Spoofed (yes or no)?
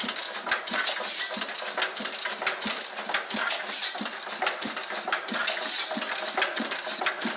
no